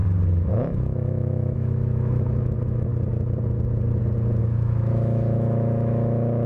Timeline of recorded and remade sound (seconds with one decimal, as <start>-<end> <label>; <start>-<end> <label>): 0.0-0.5 recorded; 0.5-2.9 remade; 2.9-4.4 recorded; 4.4-6.5 remade